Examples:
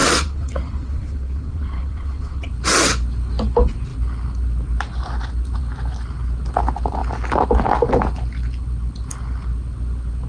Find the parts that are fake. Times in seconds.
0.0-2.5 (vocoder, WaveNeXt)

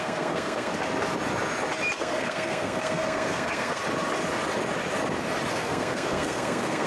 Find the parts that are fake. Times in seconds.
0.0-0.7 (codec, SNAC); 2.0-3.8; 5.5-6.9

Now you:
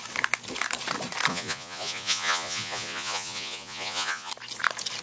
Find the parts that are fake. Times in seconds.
1.3-4.3 (vocoder, Vocos)